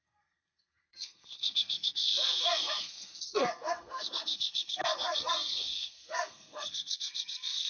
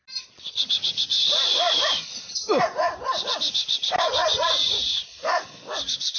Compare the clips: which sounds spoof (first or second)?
first